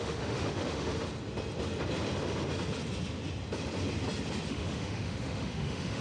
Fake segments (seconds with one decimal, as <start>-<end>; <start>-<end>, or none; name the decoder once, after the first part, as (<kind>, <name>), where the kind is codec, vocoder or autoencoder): 0.0-0.9 (autoencoder, DAC-VAE); 4.5-6.0